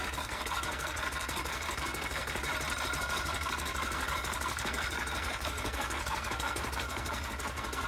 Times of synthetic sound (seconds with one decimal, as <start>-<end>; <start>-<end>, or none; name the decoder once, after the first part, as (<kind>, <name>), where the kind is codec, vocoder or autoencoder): 0.0-2.5 (codec, SNAC); 3.0-7.9